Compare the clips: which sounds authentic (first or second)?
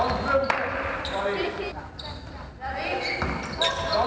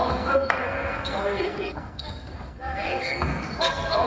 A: first